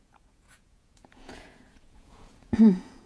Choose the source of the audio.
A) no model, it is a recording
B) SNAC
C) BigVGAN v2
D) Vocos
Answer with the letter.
D